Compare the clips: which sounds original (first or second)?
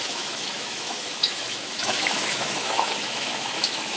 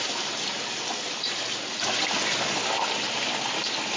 second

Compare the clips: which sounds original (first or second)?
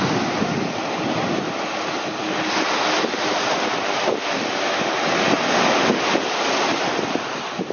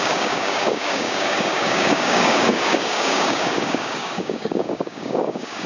first